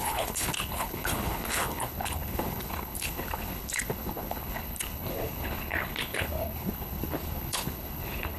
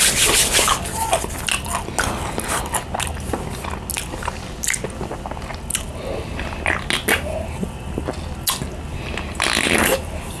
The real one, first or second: second